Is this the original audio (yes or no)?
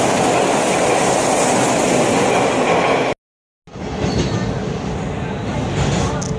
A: yes